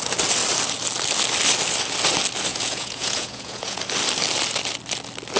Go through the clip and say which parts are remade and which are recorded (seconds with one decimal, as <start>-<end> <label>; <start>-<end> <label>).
0.0-2.5 recorded; 2.5-3.8 remade; 3.8-5.4 recorded